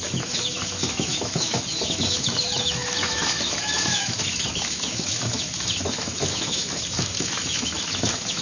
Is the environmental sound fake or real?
fake